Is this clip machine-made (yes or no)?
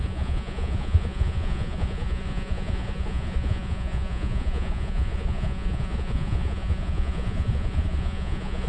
yes